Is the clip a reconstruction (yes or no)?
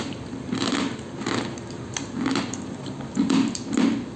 yes